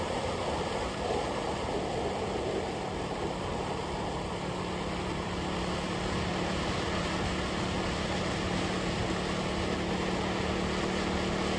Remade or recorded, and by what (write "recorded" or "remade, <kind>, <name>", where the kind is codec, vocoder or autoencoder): recorded